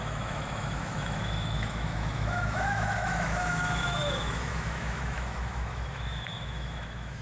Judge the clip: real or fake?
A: fake